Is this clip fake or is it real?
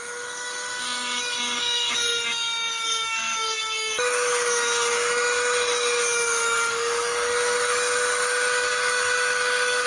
fake